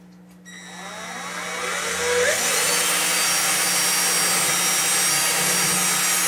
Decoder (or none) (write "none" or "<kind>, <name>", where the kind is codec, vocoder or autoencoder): none